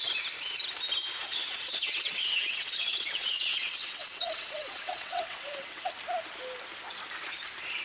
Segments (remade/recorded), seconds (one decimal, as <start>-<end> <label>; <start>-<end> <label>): 0.0-1.2 recorded; 1.2-5.9 remade; 5.9-7.8 recorded